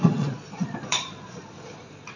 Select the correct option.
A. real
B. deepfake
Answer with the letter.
B